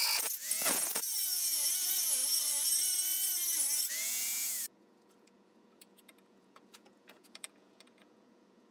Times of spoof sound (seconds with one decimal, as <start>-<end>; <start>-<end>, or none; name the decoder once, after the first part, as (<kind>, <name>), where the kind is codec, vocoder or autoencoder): 0.0-2.2 (vocoder, Vocos); 3.9-8.7